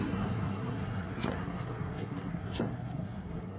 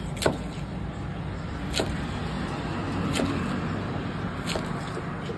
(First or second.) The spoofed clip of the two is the first